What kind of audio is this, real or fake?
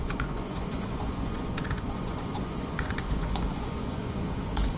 fake